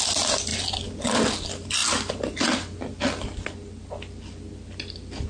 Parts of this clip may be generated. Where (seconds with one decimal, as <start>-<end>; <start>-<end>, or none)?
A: none